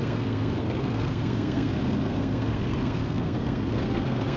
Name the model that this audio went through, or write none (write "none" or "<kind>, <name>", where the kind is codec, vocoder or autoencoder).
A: codec, SNAC